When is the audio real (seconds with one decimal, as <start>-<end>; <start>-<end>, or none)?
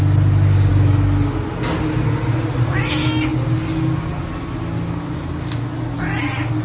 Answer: 0.0-6.6